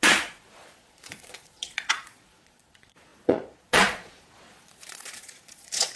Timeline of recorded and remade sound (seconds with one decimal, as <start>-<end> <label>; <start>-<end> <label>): 0.0-6.0 remade